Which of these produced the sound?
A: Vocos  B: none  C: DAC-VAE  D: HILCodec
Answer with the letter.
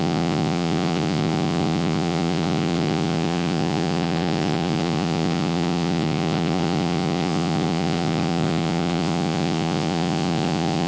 A